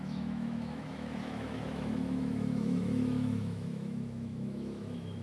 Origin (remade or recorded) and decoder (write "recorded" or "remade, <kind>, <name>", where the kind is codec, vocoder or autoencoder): remade, autoencoder, DAC-VAE